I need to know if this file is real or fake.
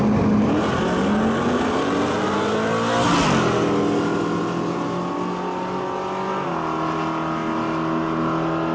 real